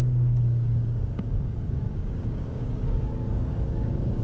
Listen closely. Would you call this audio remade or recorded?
remade